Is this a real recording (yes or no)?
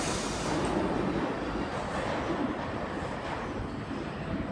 yes